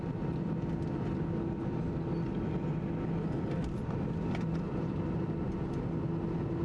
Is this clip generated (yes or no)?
no